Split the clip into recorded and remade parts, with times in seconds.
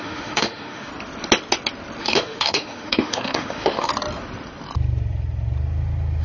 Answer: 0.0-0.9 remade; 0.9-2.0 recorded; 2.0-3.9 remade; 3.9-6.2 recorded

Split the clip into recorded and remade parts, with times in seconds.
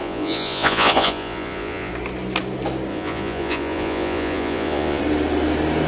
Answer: 0.0-1.9 remade; 1.9-2.9 recorded; 2.9-5.0 remade; 5.0-5.9 recorded